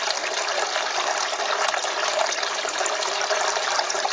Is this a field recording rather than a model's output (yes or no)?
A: yes